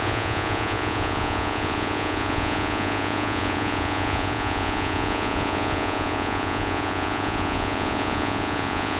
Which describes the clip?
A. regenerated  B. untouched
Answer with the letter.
A